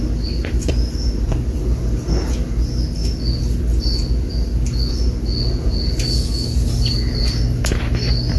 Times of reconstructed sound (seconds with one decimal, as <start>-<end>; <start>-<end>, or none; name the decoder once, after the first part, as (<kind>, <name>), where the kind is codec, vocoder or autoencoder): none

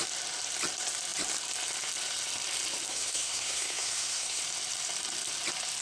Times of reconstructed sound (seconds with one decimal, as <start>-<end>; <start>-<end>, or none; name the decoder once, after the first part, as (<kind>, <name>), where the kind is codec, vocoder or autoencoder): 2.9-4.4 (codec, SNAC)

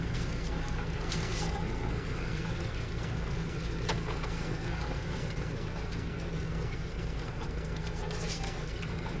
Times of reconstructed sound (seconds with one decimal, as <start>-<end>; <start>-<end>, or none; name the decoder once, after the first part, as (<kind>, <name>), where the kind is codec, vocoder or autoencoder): 0.0-9.2 (codec, SNAC)

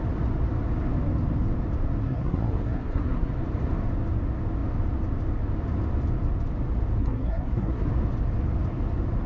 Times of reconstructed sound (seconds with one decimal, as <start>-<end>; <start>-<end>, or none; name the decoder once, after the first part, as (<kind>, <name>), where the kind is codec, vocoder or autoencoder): 2.0-3.3 (codec, SNAC); 7.0-7.9